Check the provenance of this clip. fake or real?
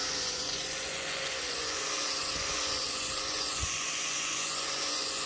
fake